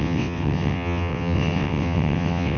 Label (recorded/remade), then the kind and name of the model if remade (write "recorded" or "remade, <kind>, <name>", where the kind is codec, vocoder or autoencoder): remade, vocoder, WaveNeXt